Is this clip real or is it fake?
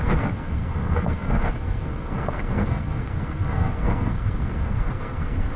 fake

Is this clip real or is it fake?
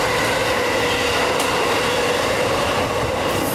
real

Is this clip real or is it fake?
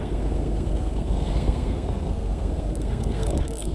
fake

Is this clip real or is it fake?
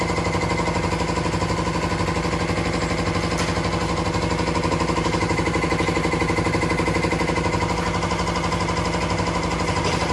real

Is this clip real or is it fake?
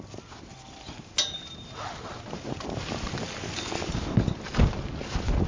real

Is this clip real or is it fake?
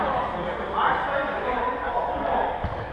real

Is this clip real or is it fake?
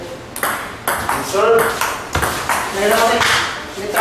real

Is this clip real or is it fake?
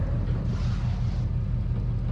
real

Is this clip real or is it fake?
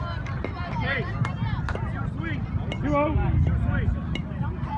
real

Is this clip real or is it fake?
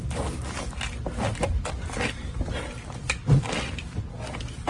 real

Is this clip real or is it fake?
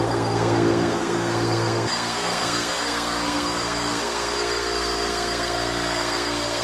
fake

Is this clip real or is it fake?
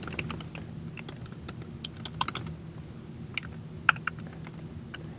real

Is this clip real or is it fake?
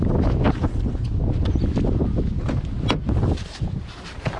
real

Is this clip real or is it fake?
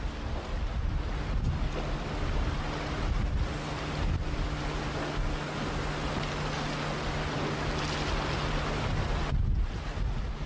real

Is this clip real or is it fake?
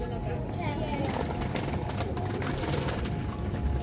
real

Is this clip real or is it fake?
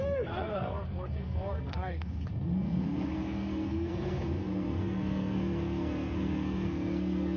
fake